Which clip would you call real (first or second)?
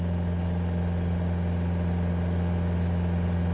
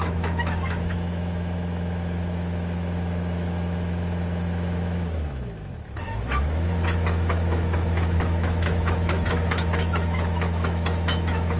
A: first